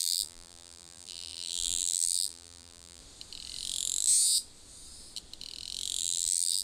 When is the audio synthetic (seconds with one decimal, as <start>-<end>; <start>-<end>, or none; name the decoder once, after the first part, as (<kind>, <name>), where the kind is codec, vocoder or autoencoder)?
0.0-3.0 (vocoder, BigVGAN v2); 6.0-6.6